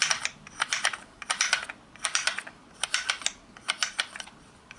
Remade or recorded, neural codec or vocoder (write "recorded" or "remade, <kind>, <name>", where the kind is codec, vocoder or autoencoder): remade, vocoder, BigVGAN v2